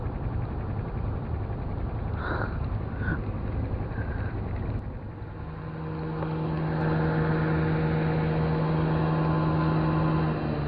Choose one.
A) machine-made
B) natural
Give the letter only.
B